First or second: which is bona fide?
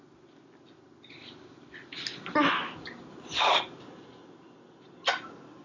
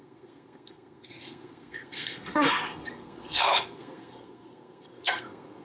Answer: first